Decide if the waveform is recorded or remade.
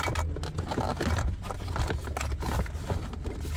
recorded